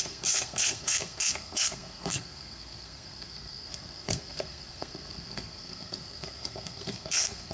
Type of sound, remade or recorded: remade